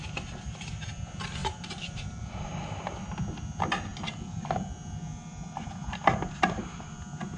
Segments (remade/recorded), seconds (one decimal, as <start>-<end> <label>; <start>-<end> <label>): 0.0-1.4 recorded; 1.4-2.2 remade; 2.2-7.4 recorded